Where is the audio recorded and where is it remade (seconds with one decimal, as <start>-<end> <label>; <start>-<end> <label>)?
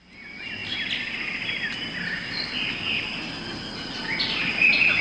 0.0-5.0 recorded